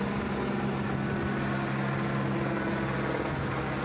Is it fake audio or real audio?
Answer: real